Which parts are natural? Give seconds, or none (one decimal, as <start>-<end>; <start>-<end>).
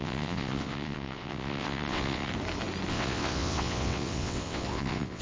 2.3-2.9